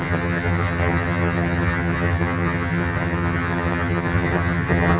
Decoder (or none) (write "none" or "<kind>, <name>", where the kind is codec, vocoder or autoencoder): vocoder, HiFi-GAN